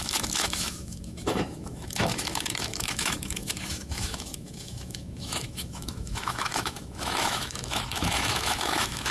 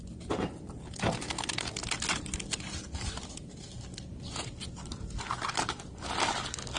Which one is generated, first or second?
first